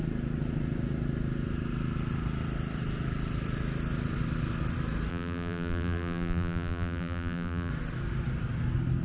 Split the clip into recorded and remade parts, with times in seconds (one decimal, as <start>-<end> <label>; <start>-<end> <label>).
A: 0.0-5.1 recorded; 5.1-7.7 remade; 7.7-9.0 recorded